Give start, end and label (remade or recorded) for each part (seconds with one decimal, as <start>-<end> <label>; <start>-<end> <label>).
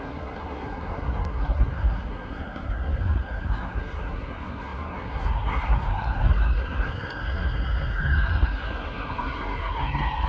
0.0-10.3 remade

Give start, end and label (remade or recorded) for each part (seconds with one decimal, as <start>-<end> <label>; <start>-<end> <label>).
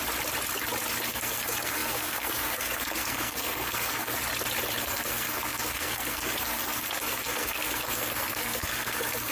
0.0-1.1 recorded; 1.1-4.2 remade; 4.2-4.8 recorded; 4.8-9.3 remade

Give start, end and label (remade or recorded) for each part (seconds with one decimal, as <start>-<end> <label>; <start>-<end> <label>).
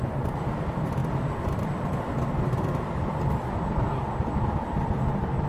0.0-5.5 recorded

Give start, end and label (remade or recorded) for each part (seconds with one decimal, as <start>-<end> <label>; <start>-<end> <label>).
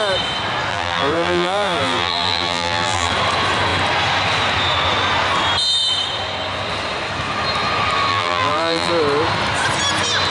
0.0-0.7 recorded; 0.7-3.1 remade; 3.1-8.1 recorded; 8.1-8.9 remade; 8.9-10.3 recorded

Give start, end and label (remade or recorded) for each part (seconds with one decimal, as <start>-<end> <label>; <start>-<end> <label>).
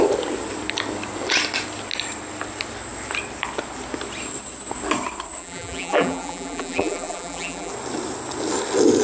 0.0-5.4 recorded; 5.4-7.7 remade; 7.7-9.0 recorded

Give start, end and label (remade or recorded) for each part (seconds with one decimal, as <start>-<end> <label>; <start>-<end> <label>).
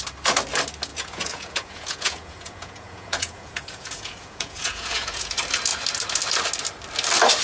0.0-0.9 recorded; 0.9-5.3 remade; 5.3-7.4 recorded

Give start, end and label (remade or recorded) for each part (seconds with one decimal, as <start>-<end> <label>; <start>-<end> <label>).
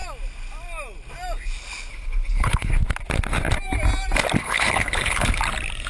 0.0-1.9 recorded; 1.9-2.7 remade; 2.7-4.4 recorded; 4.4-5.4 remade; 5.4-5.9 recorded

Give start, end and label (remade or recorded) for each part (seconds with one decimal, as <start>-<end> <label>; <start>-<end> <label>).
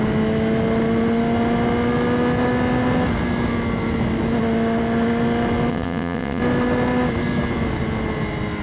0.0-5.7 recorded; 5.7-6.4 remade; 6.4-8.6 recorded